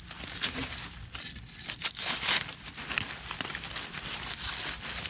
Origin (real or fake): real